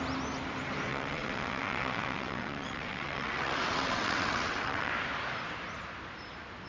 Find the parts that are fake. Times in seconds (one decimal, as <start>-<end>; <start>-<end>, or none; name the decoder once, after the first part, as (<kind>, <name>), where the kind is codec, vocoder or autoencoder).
0.9-4.9 (vocoder, WaveNeXt)